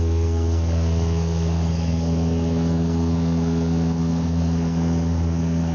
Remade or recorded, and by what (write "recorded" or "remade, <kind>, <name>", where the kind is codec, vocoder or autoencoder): remade, codec, SNAC